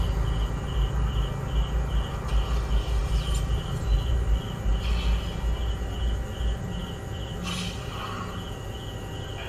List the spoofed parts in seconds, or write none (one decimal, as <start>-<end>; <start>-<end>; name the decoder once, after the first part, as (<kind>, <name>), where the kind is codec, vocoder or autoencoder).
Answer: 3.0-4.7 (vocoder, BigVGAN v2)